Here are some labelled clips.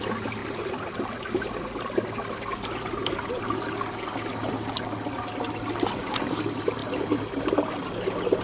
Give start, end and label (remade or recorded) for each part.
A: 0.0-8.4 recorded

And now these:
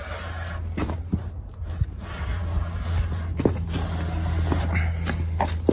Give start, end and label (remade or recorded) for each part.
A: 0.0-5.7 recorded

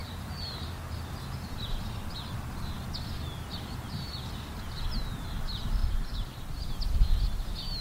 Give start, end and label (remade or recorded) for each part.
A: 0.0-5.8 recorded; 5.8-6.7 remade; 6.7-7.8 recorded

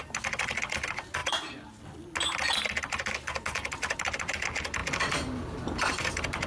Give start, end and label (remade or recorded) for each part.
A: 0.0-1.2 recorded; 1.2-1.8 remade; 1.8-6.5 recorded

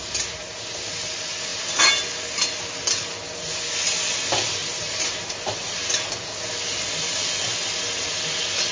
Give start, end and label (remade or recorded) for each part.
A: 0.0-4.6 recorded; 4.6-5.9 remade; 5.9-8.7 recorded

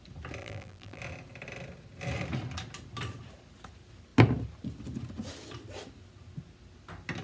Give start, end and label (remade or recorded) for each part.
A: 0.0-0.4 recorded; 0.4-1.0 remade; 1.0-7.2 recorded

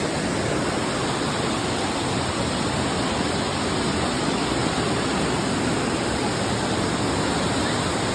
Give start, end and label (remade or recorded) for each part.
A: 0.0-1.0 recorded; 1.0-2.5 remade; 2.5-8.1 recorded